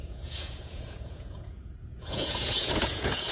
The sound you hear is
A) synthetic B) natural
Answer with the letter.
A